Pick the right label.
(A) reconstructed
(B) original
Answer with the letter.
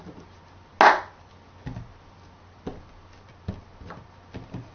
B